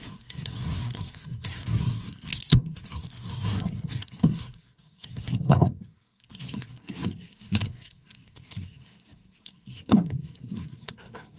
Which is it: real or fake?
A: fake